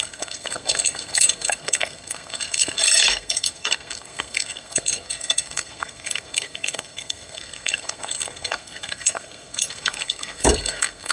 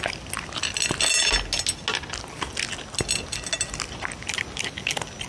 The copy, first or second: first